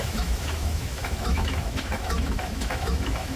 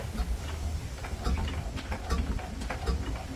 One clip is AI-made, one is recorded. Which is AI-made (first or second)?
first